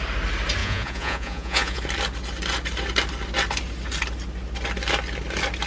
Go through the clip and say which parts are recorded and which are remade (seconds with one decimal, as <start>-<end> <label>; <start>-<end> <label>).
0.0-0.6 recorded; 0.6-1.8 remade; 1.8-5.7 recorded